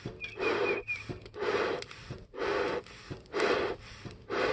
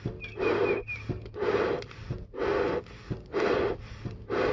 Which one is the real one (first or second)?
second